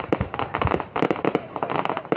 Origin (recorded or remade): recorded